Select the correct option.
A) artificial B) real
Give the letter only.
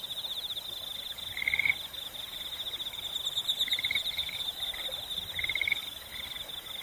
B